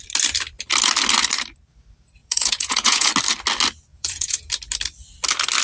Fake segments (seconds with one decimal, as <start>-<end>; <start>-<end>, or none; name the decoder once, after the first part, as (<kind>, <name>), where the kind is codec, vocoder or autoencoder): 2.2-3.1 (vocoder, Vocos); 3.9-4.5